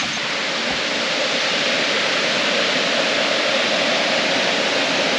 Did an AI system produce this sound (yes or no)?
no